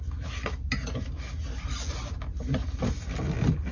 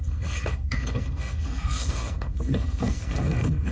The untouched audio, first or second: first